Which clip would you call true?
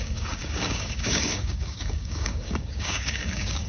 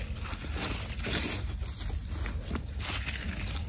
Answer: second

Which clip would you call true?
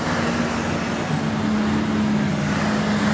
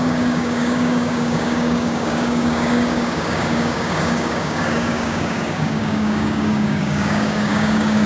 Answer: first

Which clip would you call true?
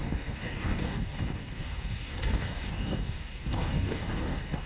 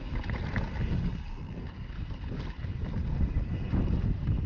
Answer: second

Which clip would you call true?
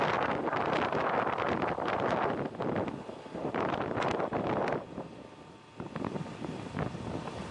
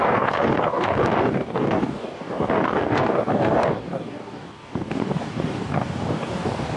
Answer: first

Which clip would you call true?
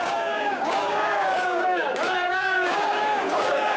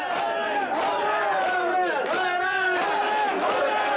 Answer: second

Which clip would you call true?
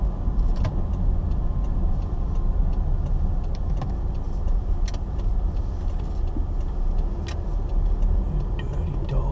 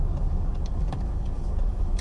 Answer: first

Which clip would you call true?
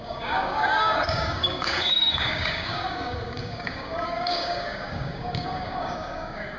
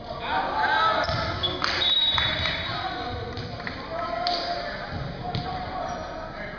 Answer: second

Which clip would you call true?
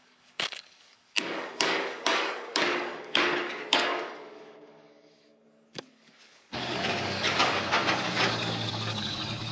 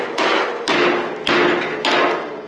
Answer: second